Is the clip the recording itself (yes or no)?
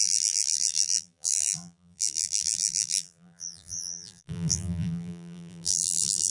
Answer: no